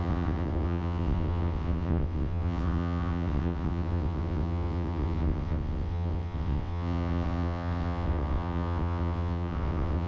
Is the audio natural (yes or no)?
no